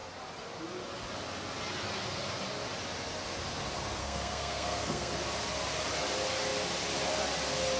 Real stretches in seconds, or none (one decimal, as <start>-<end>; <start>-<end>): 0.0-4.0; 5.1-7.8